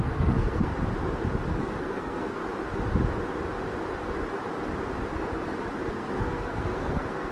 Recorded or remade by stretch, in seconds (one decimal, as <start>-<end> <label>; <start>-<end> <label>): 0.0-0.7 remade; 0.7-1.6 recorded; 1.6-2.4 remade; 2.4-5.9 recorded; 5.9-7.3 remade